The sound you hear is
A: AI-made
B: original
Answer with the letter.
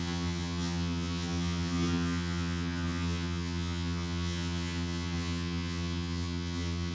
A